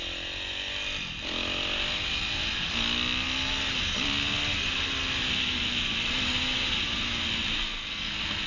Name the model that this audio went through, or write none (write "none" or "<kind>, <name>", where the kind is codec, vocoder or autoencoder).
none